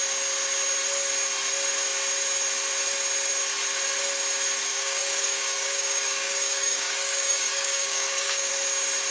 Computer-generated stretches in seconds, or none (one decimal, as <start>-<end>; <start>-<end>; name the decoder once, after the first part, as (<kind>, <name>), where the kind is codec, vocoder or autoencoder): 4.7-8.5 (codec, DAC)